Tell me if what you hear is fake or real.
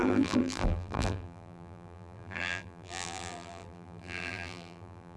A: fake